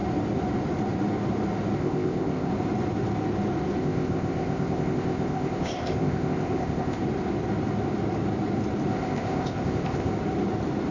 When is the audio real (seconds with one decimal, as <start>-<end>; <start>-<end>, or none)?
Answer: 0.0-1.8; 2.5-3.8; 7.0-8.9; 10.1-10.9